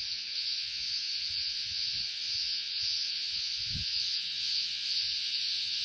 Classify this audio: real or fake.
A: fake